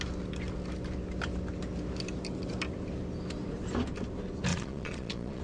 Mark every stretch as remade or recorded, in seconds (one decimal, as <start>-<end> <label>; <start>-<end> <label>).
0.0-4.5 recorded; 4.5-5.4 remade